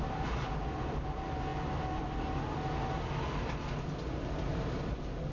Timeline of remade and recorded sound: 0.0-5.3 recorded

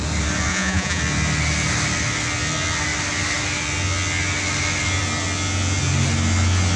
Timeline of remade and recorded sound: 0.0-0.5 recorded; 0.5-1.0 remade; 1.0-6.8 recorded

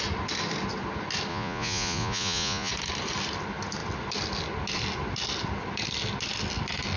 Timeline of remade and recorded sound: 0.0-1.3 recorded; 1.3-2.7 remade; 2.7-7.0 recorded